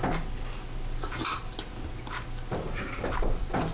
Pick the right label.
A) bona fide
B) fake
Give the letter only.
A